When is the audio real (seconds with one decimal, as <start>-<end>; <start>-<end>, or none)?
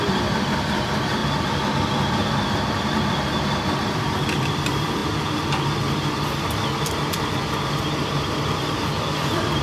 1.2-3.9; 5.0-8.7